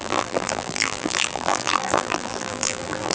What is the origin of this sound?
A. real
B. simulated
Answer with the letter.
B